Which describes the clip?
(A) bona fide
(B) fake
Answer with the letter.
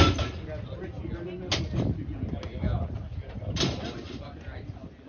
A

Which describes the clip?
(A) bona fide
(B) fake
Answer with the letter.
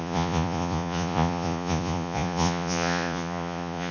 B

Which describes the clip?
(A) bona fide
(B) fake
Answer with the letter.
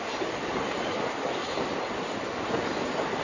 A